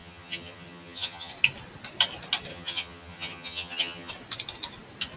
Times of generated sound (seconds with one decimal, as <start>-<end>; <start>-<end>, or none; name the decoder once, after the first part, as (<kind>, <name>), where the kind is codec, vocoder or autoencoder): 0.0-1.3 (vocoder, HiFi-GAN); 2.5-4.1